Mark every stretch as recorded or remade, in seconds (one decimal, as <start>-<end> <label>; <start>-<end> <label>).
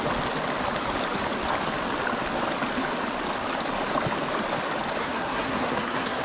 0.0-5.0 recorded; 5.0-6.2 remade